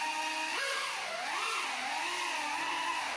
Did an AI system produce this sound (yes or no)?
no